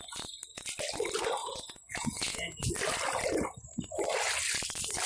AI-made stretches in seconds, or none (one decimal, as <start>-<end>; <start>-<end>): 1.4-2.7